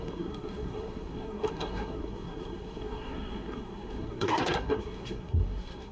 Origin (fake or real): fake